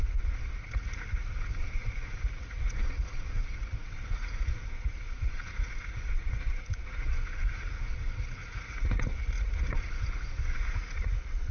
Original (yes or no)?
no